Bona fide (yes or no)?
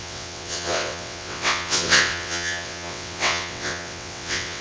no